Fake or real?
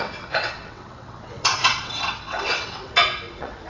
fake